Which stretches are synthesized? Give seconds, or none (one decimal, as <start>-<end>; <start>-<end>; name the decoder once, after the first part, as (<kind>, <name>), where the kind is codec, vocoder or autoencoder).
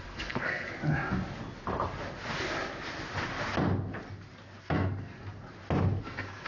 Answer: 0.0-0.7 (codec, SNAC); 4.6-5.2; 6.0-6.5